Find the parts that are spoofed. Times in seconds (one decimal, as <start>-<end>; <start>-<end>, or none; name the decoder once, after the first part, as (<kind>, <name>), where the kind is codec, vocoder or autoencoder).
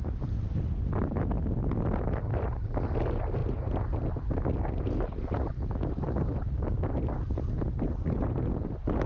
none